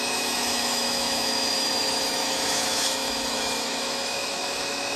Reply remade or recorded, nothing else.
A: remade